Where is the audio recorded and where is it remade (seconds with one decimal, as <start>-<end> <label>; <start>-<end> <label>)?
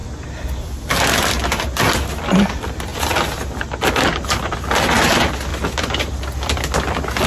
0.0-7.3 recorded